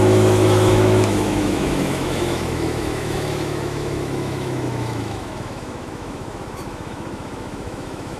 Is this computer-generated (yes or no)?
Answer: yes